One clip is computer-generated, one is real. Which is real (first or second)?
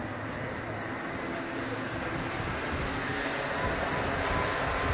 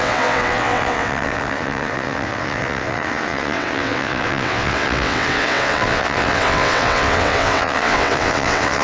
first